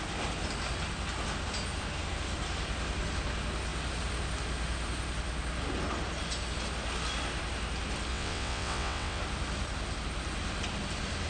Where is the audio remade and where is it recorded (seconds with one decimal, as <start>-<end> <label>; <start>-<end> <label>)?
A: 0.0-8.1 recorded; 8.1-9.2 remade; 9.2-11.3 recorded